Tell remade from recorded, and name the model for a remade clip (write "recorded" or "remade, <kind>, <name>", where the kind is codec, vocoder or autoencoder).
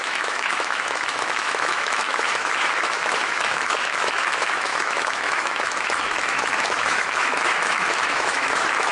remade, autoencoder, DAC-VAE